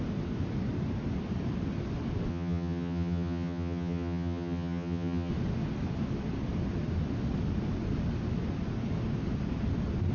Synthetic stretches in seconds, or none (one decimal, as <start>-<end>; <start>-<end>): 2.3-5.3